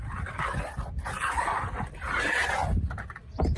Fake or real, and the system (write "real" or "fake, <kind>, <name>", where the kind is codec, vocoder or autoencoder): real